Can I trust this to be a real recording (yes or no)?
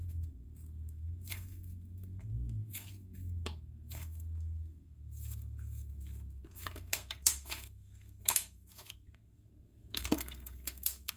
no